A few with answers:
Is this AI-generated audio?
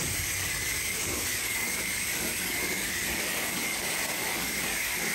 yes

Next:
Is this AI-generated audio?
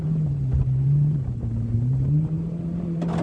yes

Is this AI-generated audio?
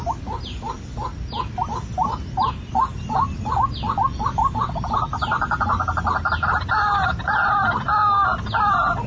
no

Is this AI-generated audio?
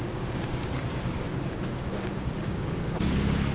yes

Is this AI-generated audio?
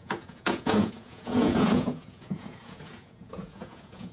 yes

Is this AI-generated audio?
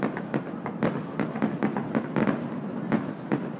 no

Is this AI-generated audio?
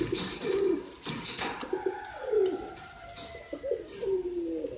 no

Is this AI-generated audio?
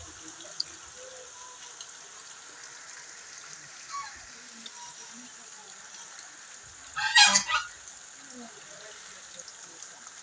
no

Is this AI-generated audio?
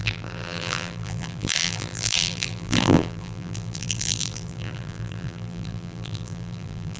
yes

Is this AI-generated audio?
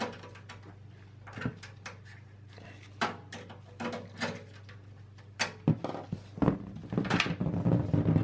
no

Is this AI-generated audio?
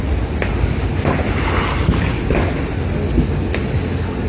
no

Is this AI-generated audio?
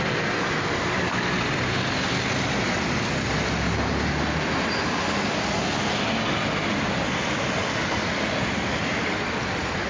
no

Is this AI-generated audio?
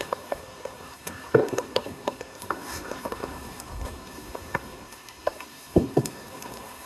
yes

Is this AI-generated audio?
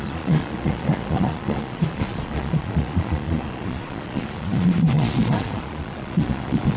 yes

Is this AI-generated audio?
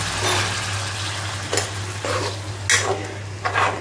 no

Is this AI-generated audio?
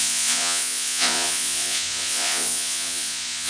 yes